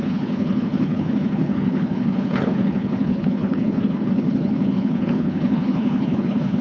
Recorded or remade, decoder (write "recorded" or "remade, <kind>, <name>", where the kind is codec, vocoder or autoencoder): remade, codec, HILCodec